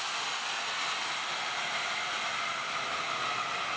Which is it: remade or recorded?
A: recorded